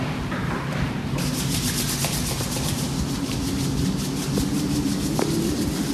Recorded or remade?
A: recorded